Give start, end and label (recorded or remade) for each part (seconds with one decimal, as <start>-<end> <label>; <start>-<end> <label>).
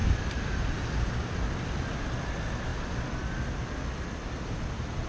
0.0-2.0 remade; 2.0-5.1 recorded